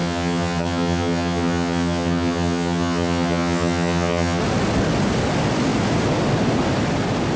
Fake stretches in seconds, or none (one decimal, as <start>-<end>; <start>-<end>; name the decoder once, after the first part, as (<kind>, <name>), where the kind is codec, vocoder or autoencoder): 0.0-4.4 (vocoder, HiFi-GAN)